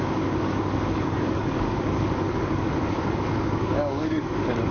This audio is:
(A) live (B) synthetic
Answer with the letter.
B